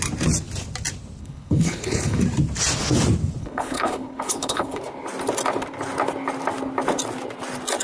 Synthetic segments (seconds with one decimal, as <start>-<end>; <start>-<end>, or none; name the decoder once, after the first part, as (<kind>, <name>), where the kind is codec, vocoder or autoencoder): 1.2-2.2 (codec, HILCodec); 3.4-4.8